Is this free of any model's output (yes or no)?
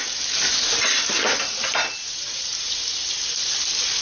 yes